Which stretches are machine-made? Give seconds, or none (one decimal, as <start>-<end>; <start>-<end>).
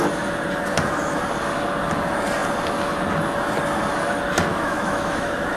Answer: 4.5-5.6